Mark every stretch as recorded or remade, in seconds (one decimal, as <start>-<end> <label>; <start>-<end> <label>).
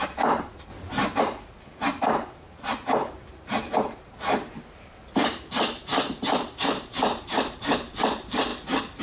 0.0-0.7 remade; 0.7-1.2 recorded; 1.2-8.5 remade; 8.5-9.0 recorded